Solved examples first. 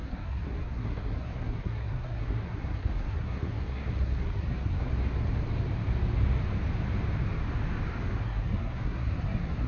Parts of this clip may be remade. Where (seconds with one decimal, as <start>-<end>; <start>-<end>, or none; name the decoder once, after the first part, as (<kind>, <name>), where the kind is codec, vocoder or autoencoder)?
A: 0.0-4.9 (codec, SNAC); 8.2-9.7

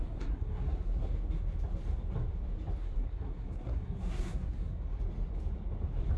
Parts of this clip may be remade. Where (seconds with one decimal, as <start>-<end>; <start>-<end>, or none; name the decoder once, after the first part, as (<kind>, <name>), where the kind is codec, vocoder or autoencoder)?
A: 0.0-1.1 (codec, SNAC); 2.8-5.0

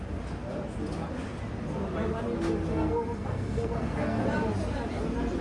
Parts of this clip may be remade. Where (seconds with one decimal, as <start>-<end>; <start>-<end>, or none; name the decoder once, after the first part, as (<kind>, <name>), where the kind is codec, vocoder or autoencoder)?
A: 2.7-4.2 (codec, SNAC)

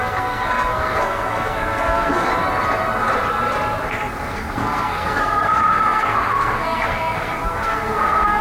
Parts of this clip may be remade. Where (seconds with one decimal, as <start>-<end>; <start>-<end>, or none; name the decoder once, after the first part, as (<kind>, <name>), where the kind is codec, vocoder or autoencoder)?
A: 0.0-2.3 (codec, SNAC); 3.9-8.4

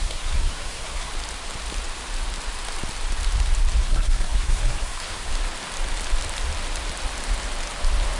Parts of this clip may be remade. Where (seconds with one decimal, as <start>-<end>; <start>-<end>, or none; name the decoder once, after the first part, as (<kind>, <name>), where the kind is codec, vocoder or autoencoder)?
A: 0.0-1.1 (codec, SNAC); 3.8-5.3